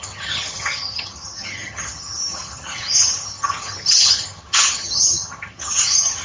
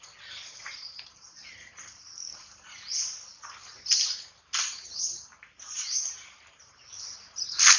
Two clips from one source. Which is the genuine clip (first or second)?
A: second